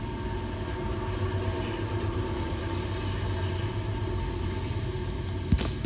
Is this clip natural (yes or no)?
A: yes